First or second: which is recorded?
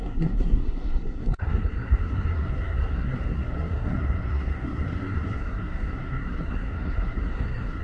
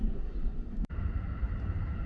second